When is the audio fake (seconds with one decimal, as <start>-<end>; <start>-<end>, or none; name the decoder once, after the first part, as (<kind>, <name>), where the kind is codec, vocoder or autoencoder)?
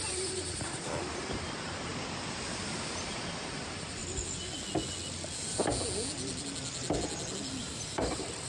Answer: 0.0-1.9 (vocoder, BigVGAN v2); 3.0-4.0; 7.6-8.5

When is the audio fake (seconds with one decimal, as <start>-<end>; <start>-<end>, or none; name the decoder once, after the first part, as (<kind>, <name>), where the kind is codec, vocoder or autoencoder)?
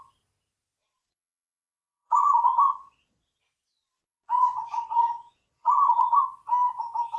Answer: 0.8-3.4 (vocoder, Vocos); 3.8-6.2